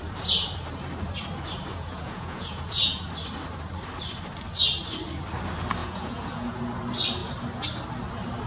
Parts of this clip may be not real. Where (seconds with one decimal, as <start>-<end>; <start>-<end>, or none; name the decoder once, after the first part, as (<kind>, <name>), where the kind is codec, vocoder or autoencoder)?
1.7-3.0 (vocoder, Vocos); 5.8-6.6